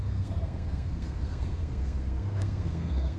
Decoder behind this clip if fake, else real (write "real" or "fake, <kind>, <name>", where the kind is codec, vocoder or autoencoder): fake, codec, SNAC